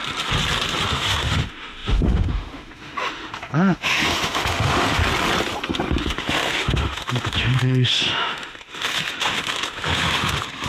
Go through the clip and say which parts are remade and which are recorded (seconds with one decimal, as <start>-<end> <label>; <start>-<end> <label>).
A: 0.0-0.9 recorded; 0.9-5.0 remade; 5.0-6.0 recorded; 6.0-10.7 remade